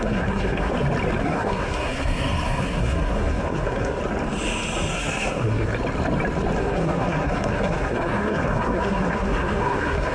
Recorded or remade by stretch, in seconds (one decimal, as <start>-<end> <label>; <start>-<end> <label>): 0.0-0.7 remade; 0.7-1.2 recorded; 1.2-4.0 remade; 4.0-4.9 recorded; 4.9-5.7 remade; 5.7-6.6 recorded; 6.6-10.1 remade